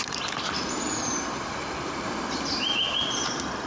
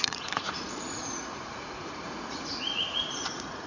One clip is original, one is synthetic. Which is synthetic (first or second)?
second